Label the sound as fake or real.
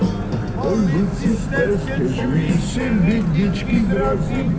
real